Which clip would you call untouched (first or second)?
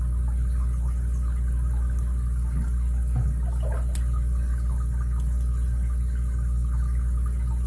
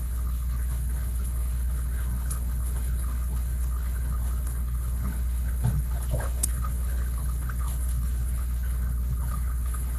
first